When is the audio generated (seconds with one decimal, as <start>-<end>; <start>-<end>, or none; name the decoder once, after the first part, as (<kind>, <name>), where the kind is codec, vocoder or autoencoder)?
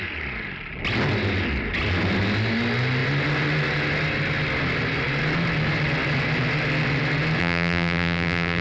7.4-8.6 (vocoder, BigVGAN v2)